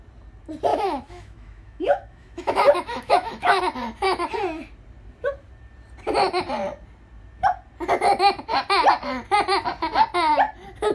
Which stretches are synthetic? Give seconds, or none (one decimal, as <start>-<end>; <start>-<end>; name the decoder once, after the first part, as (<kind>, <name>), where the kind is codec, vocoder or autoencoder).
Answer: 0.7-3.6 (autoencoder, DAC-VAE)